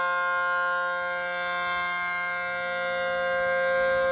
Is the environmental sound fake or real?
real